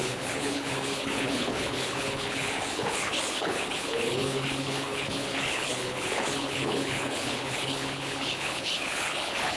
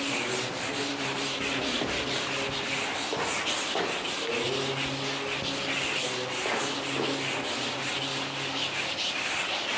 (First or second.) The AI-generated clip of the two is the first